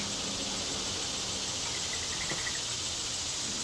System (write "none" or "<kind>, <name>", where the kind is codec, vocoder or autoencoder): none